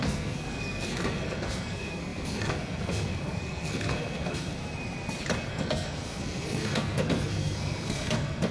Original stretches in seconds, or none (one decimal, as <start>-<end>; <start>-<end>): 4.6-5.5